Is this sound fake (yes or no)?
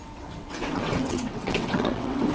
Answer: yes